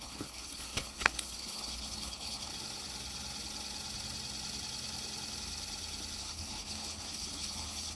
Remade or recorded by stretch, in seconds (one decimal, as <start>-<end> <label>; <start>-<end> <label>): 0.0-2.5 remade; 2.5-6.2 recorded; 6.2-7.9 remade